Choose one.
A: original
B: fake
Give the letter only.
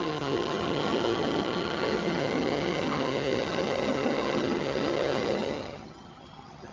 B